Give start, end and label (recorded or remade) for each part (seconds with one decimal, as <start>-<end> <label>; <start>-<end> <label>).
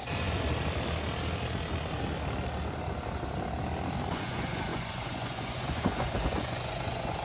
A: 0.0-0.5 remade; 0.5-4.1 recorded; 4.1-7.2 remade